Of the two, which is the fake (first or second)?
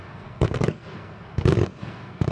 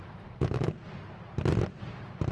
first